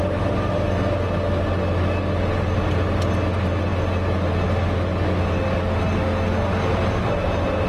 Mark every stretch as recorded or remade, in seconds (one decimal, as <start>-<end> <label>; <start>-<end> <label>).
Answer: 0.0-7.7 recorded